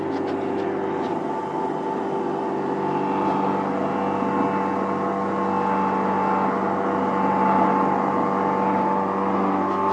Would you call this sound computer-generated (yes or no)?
no